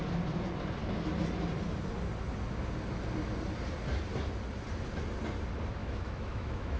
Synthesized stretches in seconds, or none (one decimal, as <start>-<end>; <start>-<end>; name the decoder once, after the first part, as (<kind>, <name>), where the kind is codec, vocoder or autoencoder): 5.8-6.8 (autoencoder, DAC-VAE)